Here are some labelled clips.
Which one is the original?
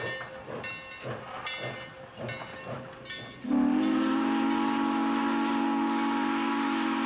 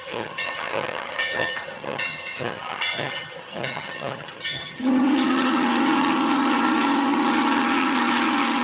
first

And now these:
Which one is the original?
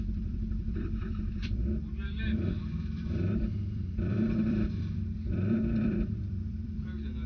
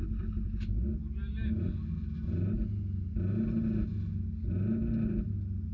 second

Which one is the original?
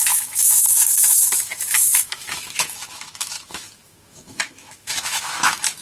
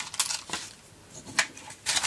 second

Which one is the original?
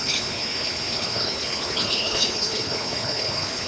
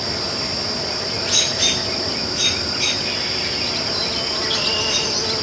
second